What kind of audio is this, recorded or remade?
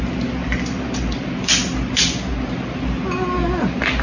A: recorded